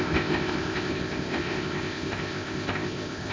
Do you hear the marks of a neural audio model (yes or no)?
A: yes